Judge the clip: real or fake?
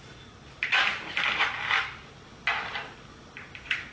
real